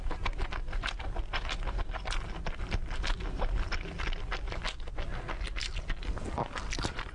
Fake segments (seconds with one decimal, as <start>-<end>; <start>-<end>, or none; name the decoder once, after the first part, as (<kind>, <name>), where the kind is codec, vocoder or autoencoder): 2.8-4.9 (vocoder, BigVGAN v2)